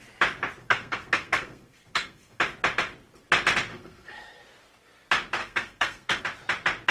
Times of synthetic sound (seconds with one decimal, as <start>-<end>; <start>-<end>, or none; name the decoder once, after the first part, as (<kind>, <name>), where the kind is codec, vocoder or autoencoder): 0.6-2.4 (codec, SNAC); 3.7-4.4; 5.4-6.2